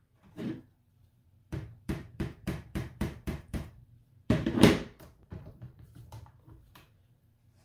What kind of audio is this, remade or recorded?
remade